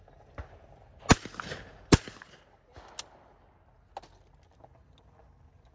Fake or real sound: real